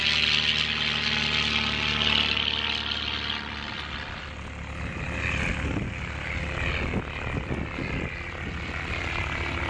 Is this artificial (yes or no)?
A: no